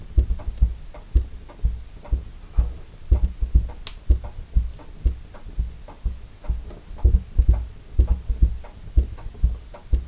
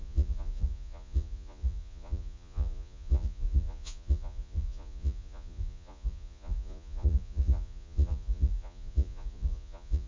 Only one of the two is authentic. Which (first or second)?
first